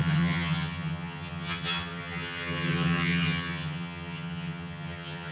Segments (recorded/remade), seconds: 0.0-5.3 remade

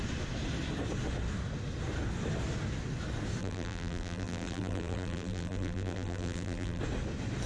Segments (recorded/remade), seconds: 0.0-3.4 recorded; 3.4-6.8 remade; 6.8-7.5 recorded

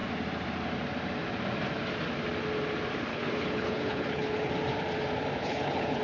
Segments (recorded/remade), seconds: 0.0-3.1 recorded; 3.1-4.5 remade; 4.5-5.4 recorded; 5.4-6.0 remade

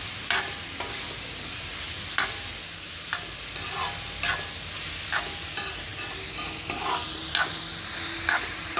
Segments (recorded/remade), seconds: 0.0-8.8 recorded

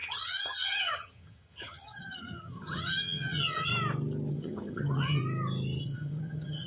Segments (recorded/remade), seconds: 0.0-3.7 remade; 3.7-4.3 recorded; 4.3-5.2 remade; 5.2-5.8 recorded; 5.8-6.7 remade

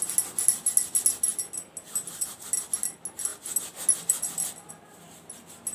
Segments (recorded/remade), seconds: 0.0-5.7 recorded